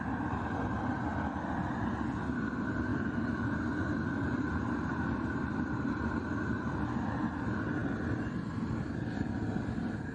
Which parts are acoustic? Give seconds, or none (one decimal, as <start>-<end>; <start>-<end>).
0.0-2.9; 6.4-7.8; 8.9-10.1